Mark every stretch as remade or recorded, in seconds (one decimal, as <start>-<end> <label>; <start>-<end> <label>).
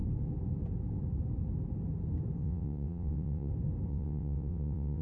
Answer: 0.0-2.4 recorded; 2.4-3.5 remade; 3.5-3.9 recorded; 3.9-5.0 remade